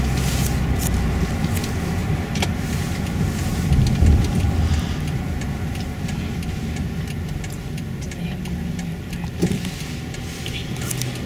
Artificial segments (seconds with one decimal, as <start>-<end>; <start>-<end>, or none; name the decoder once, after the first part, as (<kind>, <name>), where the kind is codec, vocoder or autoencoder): 2.0-3.3 (vocoder, BigVGAN v2)